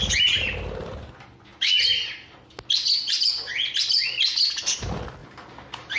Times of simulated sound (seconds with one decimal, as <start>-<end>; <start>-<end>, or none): none